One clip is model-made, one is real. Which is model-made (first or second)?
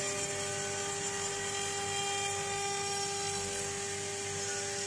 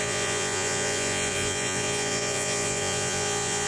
second